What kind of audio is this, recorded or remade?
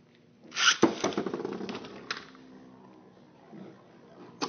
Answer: recorded